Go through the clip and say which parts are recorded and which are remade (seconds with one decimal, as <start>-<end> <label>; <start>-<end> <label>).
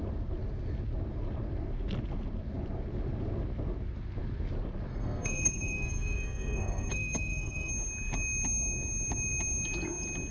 0.0-4.9 recorded; 4.9-7.7 remade; 7.7-10.3 recorded